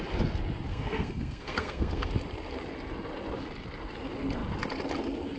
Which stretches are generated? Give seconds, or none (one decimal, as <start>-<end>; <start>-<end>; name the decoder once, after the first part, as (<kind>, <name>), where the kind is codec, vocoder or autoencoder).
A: 0.7-2.1 (codec, SNAC)